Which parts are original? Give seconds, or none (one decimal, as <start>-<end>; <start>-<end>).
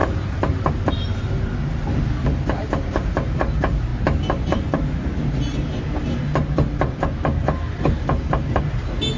0.0-9.2